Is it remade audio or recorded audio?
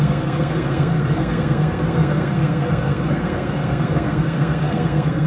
remade